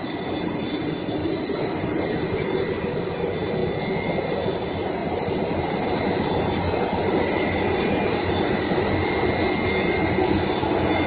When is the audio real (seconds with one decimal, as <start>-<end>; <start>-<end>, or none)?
0.0-1.2; 2.1-5.0; 6.0-11.1